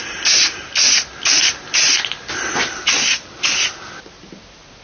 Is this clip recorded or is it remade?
recorded